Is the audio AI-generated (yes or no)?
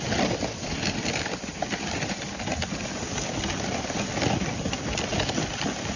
no